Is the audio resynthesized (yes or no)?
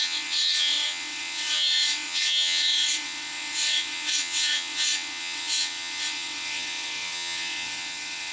yes